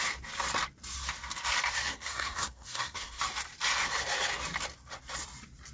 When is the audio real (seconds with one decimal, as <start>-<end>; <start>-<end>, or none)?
0.0-1.9; 3.2-5.7